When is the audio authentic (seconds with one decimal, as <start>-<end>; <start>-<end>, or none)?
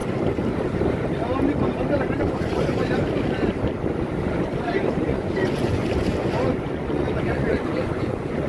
0.0-2.2; 2.8-4.9; 5.8-6.4